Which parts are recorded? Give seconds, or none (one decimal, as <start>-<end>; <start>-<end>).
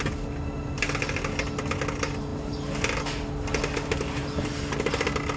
0.0-5.4